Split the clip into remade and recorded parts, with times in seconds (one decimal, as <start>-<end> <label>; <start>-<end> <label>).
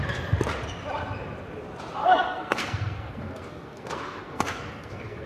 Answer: 0.0-2.0 recorded; 2.0-5.3 remade